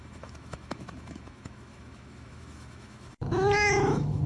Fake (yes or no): yes